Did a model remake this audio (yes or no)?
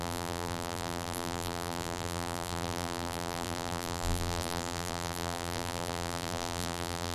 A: yes